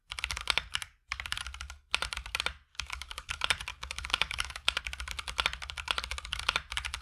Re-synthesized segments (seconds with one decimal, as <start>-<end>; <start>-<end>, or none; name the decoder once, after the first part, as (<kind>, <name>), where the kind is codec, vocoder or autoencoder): 2.7-3.3 (codec, DAC); 3.7-4.8